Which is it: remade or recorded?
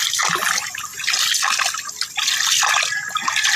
recorded